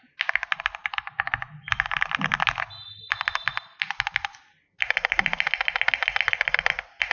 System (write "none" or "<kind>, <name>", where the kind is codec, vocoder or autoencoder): none